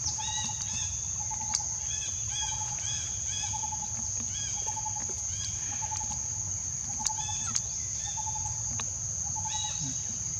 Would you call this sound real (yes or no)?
yes